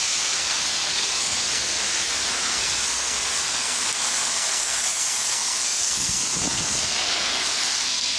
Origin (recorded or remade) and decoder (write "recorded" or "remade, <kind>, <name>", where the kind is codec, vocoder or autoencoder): remade, codec, SNAC